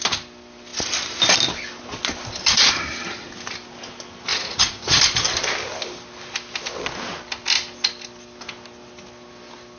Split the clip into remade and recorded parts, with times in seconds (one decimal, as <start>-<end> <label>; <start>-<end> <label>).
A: 0.0-4.3 recorded; 4.3-5.0 remade; 5.0-9.8 recorded